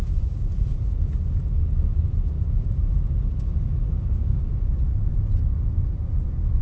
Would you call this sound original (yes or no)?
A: no